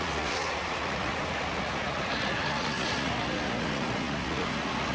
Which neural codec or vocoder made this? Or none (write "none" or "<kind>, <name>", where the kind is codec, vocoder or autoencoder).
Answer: vocoder, Vocos